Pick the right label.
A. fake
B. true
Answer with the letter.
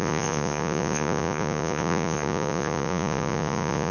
A